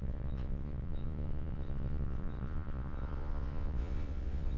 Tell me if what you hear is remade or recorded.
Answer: remade